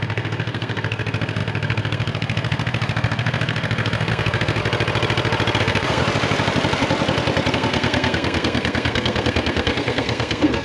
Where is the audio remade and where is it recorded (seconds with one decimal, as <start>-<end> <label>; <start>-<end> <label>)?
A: 0.0-4.6 remade; 4.6-5.6 recorded; 5.6-6.0 remade; 6.0-7.5 recorded; 7.5-10.6 remade